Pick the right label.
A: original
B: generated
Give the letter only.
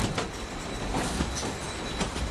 A